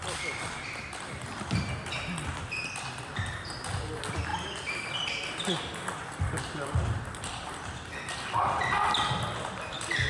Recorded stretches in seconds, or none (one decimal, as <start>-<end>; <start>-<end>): 0.0-10.1